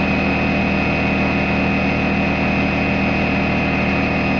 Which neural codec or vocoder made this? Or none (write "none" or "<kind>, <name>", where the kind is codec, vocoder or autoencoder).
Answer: none